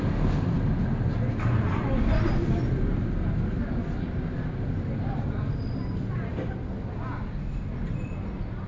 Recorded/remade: recorded